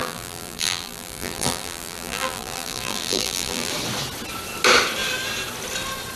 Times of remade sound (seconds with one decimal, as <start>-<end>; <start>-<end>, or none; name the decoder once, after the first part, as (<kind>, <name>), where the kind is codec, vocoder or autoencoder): 0.0-3.7 (vocoder, BigVGAN v2)